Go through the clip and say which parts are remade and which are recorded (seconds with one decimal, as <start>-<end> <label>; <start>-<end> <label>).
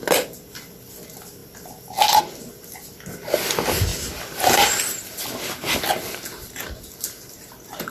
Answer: 0.0-7.9 recorded